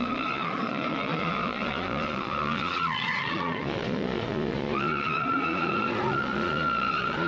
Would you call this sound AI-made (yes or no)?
yes